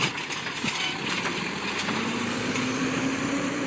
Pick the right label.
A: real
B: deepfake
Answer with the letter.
B